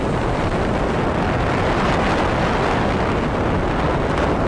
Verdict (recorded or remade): recorded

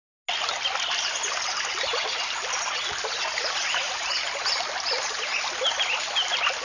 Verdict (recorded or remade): recorded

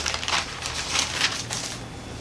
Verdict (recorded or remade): recorded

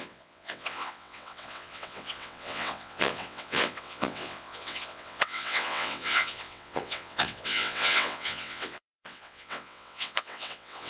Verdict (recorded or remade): remade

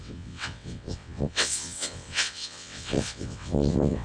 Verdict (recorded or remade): remade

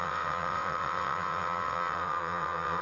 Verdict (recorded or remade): remade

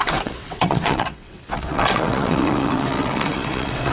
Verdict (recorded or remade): remade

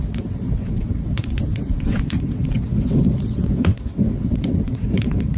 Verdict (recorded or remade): remade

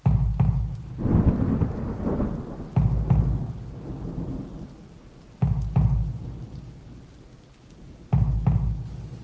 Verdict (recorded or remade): recorded